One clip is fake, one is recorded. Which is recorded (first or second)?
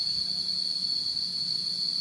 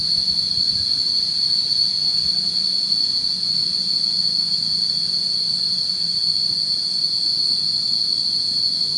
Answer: first